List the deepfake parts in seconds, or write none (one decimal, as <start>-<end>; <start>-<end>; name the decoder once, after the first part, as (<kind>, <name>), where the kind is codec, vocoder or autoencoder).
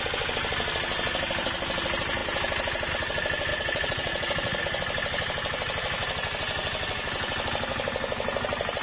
3.5-4.6 (vocoder, Vocos)